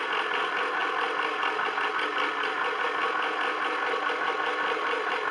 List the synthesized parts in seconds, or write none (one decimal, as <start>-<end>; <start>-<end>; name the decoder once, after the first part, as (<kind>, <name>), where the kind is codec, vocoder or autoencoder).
none